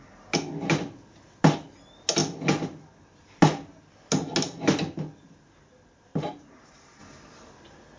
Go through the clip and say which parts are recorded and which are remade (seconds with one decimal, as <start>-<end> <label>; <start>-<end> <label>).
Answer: 0.0-6.1 recorded; 6.1-6.6 remade; 6.6-8.0 recorded

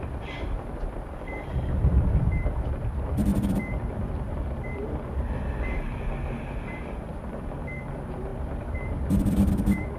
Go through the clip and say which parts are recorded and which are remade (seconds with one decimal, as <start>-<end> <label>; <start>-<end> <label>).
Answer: 0.0-10.0 remade

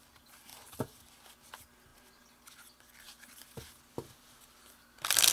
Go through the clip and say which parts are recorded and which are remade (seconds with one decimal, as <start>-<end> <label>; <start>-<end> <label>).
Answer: 0.0-5.3 recorded

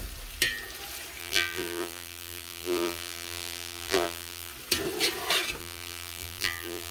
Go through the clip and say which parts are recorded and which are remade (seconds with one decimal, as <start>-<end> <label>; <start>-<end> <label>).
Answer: 0.0-1.2 recorded; 1.2-4.5 remade; 4.5-5.6 recorded; 5.6-6.9 remade